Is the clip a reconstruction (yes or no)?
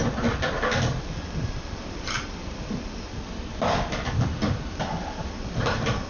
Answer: yes